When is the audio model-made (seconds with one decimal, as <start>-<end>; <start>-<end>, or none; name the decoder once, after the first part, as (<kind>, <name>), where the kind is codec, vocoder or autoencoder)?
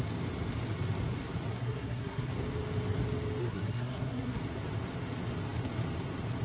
1.5-2.3 (codec, SNAC); 3.4-4.4